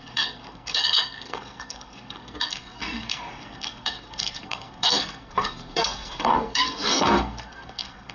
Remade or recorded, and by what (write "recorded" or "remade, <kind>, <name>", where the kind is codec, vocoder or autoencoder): remade, codec, SNAC